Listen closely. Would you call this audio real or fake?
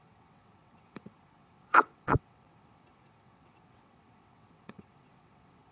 fake